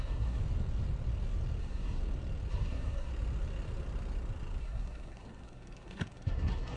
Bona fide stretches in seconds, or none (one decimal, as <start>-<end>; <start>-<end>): 0.4-1.6; 2.0-2.5; 3.1-4.6

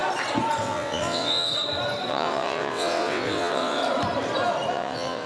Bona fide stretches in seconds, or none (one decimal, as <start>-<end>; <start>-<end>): 0.0-0.6; 1.5-2.1; 3.8-4.7

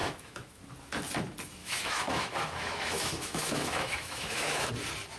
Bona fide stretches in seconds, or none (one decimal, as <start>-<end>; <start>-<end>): 0.6-1.6; 4.7-5.2

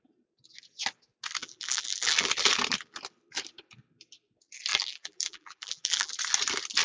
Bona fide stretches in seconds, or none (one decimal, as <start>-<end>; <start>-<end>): 0.0-1.4; 2.3-4.7; 6.1-6.8

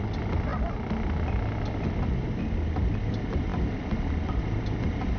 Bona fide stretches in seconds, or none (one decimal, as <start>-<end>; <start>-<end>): 0.0-5.2